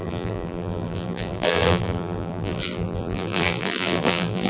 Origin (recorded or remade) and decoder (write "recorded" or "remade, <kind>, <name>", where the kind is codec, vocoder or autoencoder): remade, vocoder, BigVGAN v2